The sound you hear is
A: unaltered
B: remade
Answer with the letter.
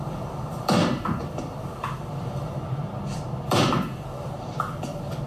B